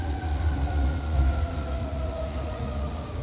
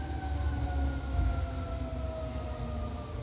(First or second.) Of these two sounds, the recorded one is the second